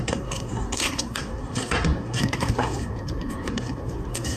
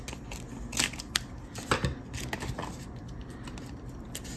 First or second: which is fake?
first